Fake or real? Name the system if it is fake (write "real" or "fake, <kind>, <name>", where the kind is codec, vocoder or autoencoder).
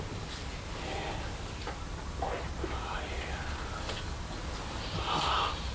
real